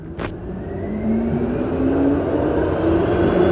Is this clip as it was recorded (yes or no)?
yes